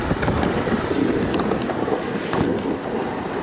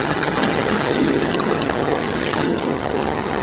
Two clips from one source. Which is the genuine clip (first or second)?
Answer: first